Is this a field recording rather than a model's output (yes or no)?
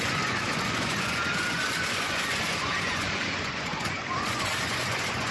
no